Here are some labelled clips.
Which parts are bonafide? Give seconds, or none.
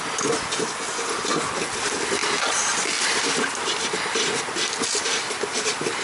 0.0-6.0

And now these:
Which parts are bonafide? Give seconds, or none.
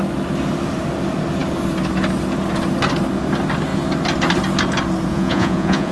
0.0-5.1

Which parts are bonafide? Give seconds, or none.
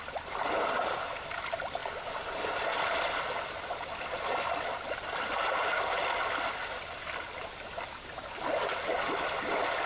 0.0-9.9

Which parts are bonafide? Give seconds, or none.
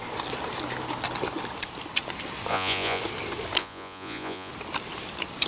0.0-2.5; 3.0-3.6; 4.5-5.5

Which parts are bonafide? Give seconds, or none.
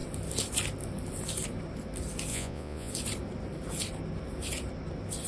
0.0-2.3; 2.9-5.3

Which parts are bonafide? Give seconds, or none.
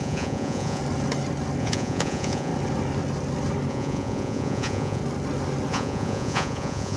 0.8-1.6; 2.5-3.7; 5.0-5.7